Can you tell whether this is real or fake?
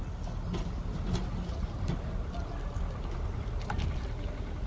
real